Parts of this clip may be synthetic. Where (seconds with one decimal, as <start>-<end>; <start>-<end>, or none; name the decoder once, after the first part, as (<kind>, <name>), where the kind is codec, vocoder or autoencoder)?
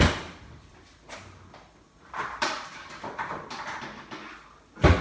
2.2-3.5 (vocoder, BigVGAN v2)